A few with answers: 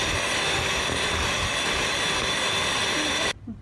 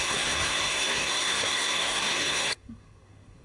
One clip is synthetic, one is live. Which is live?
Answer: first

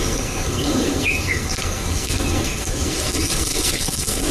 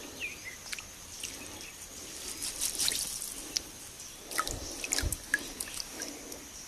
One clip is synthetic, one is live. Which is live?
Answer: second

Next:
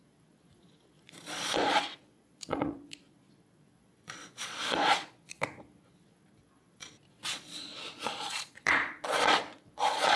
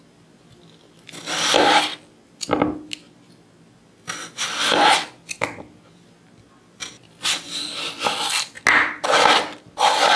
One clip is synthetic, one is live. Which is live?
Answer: second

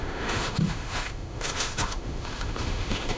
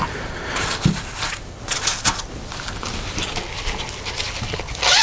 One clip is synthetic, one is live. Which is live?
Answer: second